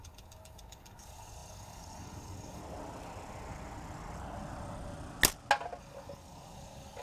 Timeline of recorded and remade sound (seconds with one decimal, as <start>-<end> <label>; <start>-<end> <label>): 0.0-2.6 remade; 2.6-5.8 recorded; 5.8-7.0 remade